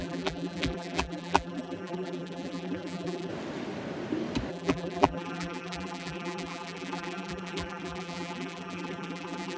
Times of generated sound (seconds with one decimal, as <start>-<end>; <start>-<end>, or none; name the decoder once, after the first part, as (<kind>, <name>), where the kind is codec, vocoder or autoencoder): 0.0-3.3 (vocoder, BigVGAN v2); 4.5-9.6